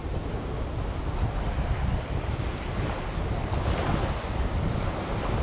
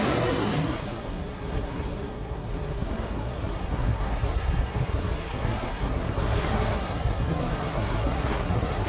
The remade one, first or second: second